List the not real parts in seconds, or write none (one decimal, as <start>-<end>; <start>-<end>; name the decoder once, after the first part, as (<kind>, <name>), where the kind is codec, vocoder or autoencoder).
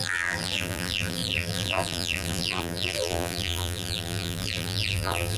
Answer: 0.0-5.4 (vocoder, BigVGAN v2)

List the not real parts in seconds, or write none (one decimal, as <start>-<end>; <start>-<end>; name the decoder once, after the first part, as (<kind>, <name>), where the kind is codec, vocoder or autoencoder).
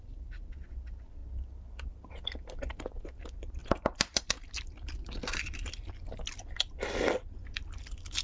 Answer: 3.6-4.2 (vocoder, BigVGAN v2)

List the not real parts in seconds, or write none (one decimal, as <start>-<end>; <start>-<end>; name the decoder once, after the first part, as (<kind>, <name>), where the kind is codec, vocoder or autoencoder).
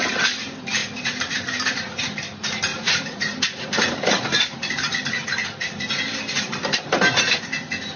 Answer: 0.8-1.9 (vocoder, BigVGAN v2); 2.7-4.1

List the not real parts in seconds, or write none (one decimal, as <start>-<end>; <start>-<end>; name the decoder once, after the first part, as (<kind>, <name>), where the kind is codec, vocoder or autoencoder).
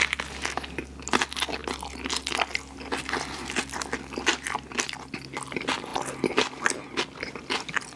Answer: none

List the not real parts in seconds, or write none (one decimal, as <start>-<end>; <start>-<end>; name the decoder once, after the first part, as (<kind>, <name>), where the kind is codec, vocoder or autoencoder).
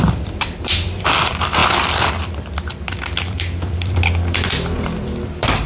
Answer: 0.0-5.7 (vocoder, BigVGAN v2)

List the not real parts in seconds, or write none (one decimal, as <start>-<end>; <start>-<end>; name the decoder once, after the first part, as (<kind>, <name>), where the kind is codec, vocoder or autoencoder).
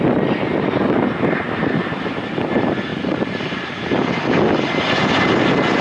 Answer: 1.6-2.3 (vocoder, BigVGAN v2); 2.9-3.9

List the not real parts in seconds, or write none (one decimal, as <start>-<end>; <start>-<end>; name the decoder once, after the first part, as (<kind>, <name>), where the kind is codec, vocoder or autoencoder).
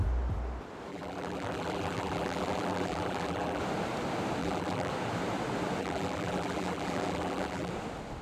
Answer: 0.9-3.6 (vocoder, BigVGAN v2); 4.4-4.9; 5.8-7.7